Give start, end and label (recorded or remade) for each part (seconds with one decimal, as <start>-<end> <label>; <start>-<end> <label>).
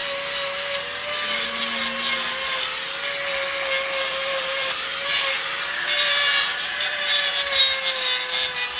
0.0-4.1 recorded; 4.1-7.6 remade; 7.6-8.8 recorded